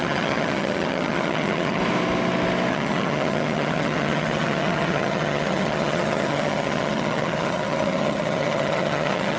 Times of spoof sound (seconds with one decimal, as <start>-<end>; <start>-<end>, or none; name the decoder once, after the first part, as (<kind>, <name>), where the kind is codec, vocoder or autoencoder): 0.0-1.8 (vocoder, HiFi-GAN); 2.7-9.4